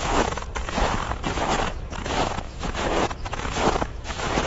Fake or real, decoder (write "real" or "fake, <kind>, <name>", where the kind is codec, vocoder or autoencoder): fake, autoencoder, DAC-VAE